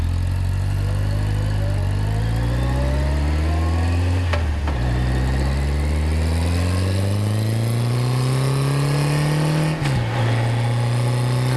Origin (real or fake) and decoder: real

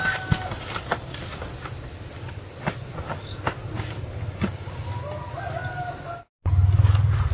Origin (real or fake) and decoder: real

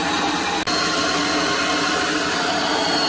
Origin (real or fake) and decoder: real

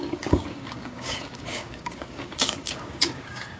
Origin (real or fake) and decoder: fake, codec, DAC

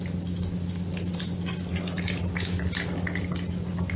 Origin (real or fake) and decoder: real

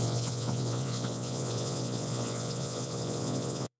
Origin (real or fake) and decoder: fake, vocoder, Vocos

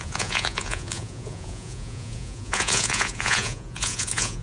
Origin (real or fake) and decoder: fake, vocoder, Vocos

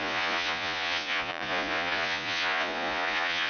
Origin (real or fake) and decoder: fake, vocoder, Vocos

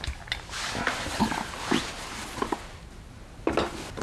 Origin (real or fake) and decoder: real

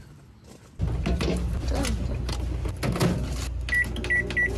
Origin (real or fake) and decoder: real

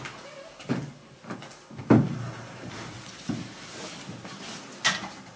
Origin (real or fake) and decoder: real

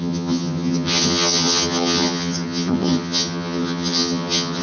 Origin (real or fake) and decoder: fake, vocoder, HiFi-GAN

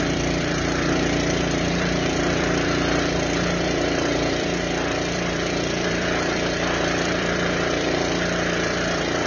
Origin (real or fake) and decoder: fake, vocoder, BigVGAN v2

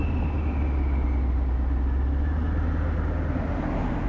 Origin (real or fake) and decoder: real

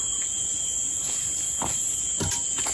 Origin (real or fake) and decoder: real